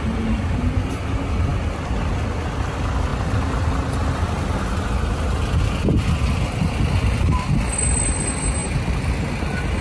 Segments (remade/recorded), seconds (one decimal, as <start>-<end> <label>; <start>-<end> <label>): 0.0-9.8 recorded